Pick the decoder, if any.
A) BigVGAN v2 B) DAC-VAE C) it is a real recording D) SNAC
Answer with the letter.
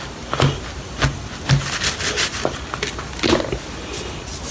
C